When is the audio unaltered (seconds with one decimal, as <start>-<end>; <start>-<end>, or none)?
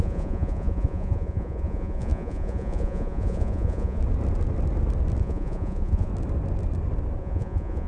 4.0-5.2; 6.1-7.2